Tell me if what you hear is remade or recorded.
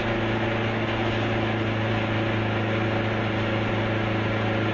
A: recorded